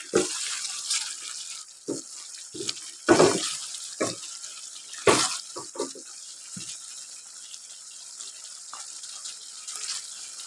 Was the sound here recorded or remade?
recorded